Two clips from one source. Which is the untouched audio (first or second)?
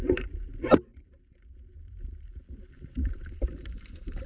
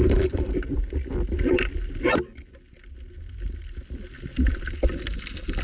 second